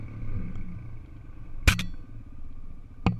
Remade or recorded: recorded